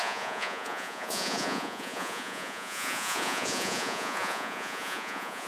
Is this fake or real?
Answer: fake